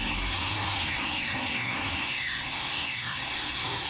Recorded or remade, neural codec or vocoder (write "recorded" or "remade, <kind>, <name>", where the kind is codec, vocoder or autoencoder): remade, codec, SNAC